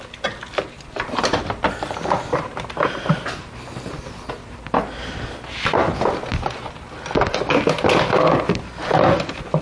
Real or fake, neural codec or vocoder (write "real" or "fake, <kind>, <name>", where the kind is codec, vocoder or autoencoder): real